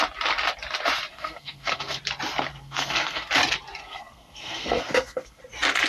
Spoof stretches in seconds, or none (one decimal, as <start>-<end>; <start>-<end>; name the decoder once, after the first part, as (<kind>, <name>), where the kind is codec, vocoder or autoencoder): 1.1-2.0 (codec, SNAC); 2.5-3.3; 3.8-5.4

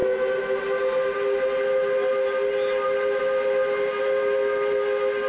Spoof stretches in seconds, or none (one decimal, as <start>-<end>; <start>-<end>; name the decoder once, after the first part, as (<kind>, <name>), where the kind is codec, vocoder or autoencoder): none

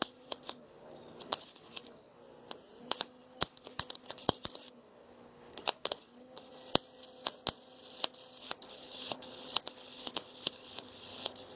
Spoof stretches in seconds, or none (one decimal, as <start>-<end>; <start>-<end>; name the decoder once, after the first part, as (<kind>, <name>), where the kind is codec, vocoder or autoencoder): 0.0-2.2 (codec, HILCodec); 2.8-6.5; 8.4-11.6

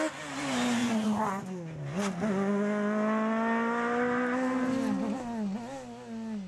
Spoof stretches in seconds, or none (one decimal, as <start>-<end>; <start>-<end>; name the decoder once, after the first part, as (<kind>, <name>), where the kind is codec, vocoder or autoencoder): 0.8-1.4 (vocoder, Vocos)

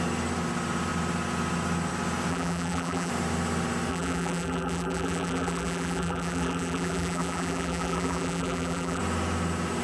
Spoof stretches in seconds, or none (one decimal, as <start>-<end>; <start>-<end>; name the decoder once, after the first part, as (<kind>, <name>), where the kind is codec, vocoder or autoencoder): 2.3-3.1 (vocoder, BigVGAN v2); 3.9-9.0

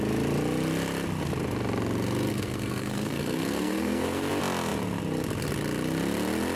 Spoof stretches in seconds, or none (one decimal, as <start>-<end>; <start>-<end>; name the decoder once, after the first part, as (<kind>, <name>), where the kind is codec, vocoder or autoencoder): 2.3-4.3 (codec, SNAC)